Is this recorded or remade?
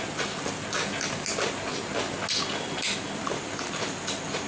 recorded